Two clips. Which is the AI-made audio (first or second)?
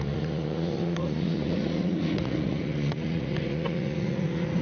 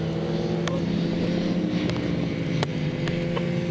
first